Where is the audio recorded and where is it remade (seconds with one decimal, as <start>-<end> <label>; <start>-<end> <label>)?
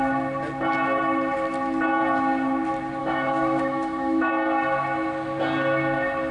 0.0-3.0 recorded; 3.0-4.3 remade; 4.3-6.3 recorded